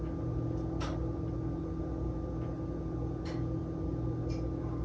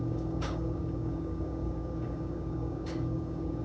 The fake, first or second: second